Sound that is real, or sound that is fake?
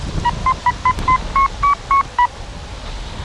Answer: real